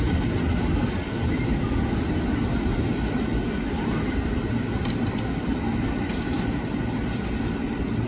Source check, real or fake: real